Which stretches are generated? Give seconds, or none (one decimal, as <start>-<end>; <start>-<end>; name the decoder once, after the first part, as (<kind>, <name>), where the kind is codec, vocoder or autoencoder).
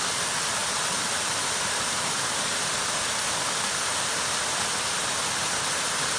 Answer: none